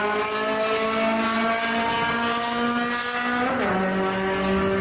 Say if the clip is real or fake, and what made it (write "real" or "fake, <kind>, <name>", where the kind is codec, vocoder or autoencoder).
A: real